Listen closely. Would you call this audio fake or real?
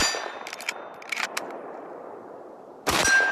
real